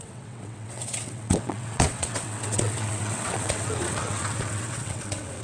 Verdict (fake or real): fake